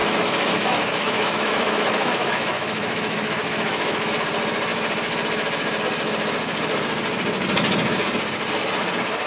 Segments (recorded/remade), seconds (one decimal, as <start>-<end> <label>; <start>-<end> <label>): 0.0-4.1 remade; 4.1-9.3 recorded